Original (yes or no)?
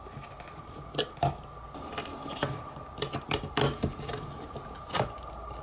yes